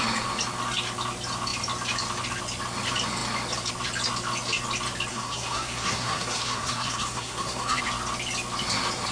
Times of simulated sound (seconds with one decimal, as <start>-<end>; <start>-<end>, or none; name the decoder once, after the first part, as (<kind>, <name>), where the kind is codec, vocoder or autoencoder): 5.1-7.8 (codec, SNAC)